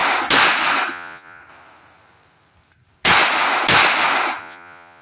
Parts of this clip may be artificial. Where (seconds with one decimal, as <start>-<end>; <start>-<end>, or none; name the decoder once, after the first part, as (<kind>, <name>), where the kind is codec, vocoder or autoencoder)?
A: 0.9-1.4 (vocoder, Vocos); 4.4-5.0